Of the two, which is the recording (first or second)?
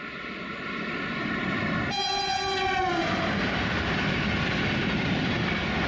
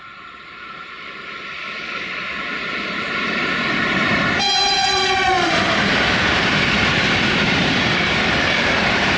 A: first